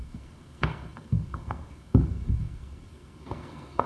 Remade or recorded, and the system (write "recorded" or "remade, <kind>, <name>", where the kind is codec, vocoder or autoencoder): remade, codec, SNAC